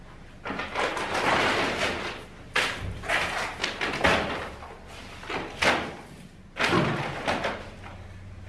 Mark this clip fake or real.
real